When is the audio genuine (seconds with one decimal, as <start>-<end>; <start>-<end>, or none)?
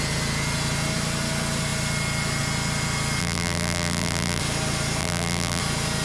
0.0-3.2; 4.4-5.0; 5.6-6.0